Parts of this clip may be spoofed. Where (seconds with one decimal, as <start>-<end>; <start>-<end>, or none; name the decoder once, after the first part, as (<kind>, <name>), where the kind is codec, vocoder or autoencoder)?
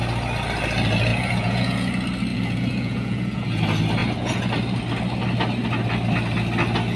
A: 1.1-1.9 (vocoder, Vocos); 2.3-3.6